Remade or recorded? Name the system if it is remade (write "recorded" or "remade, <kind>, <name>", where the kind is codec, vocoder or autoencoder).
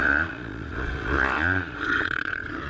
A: remade, vocoder, Vocos